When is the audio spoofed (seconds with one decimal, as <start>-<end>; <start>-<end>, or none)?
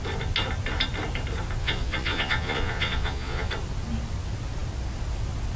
1.6-3.5